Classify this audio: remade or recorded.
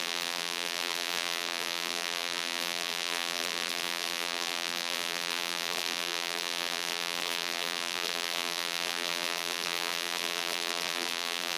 remade